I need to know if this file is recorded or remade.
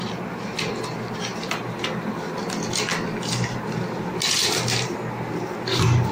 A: recorded